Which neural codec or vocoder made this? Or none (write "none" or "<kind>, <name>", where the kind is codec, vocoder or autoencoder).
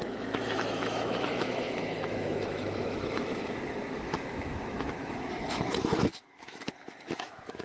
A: autoencoder, DAC-VAE